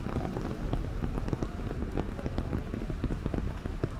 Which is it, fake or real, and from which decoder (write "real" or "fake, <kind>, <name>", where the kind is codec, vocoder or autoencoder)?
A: real